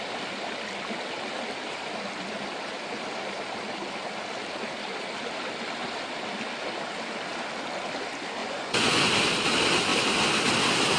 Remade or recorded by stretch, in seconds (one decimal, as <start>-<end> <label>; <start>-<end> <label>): 0.0-8.4 recorded; 8.4-9.1 remade; 9.1-11.0 recorded